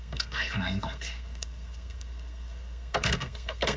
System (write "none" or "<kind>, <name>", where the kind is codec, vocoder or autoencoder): codec, SNAC